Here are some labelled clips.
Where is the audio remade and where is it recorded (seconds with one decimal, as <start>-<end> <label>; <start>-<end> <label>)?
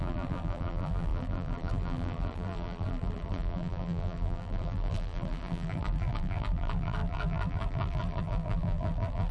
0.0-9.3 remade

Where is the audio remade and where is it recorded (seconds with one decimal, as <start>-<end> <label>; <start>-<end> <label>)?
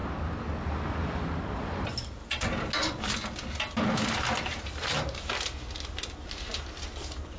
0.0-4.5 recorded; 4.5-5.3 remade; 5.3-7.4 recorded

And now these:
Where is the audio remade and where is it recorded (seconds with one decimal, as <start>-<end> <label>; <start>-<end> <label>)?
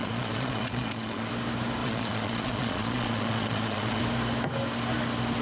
0.0-1.3 remade; 1.3-1.8 recorded; 1.8-4.0 remade; 4.0-5.4 recorded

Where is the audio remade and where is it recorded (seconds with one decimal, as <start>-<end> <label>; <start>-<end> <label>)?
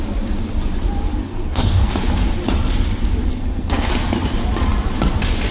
0.0-1.2 recorded; 1.2-1.9 remade; 1.9-3.3 recorded; 3.3-3.9 remade; 3.9-5.5 recorded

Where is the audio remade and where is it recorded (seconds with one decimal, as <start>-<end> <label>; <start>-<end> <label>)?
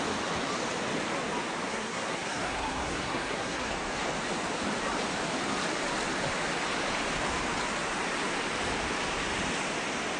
0.0-1.7 recorded; 1.7-3.7 remade; 3.7-10.2 recorded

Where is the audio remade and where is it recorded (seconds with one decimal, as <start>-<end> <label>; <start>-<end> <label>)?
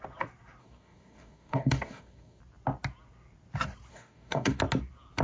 0.0-0.6 recorded; 0.6-2.4 remade; 2.4-3.9 recorded; 3.9-4.6 remade; 4.6-5.2 recorded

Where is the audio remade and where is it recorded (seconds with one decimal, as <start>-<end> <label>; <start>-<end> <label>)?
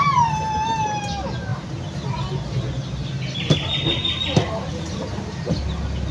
0.0-6.1 recorded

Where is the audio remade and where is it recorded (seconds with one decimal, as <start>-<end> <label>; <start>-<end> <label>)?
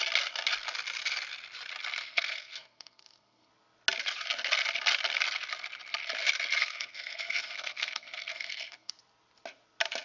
0.0-2.0 recorded; 2.0-3.5 remade; 3.5-6.6 recorded; 6.6-8.9 remade; 8.9-10.0 recorded